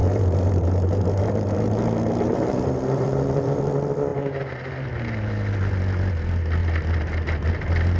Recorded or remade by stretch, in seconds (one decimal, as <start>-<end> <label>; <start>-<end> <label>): 0.0-3.6 remade; 3.6-4.1 recorded; 4.1-4.9 remade; 4.9-8.0 recorded